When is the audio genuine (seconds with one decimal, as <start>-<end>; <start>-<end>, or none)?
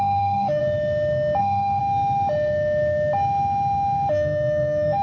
0.6-1.4; 1.8-4.1